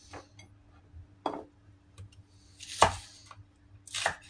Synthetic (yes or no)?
no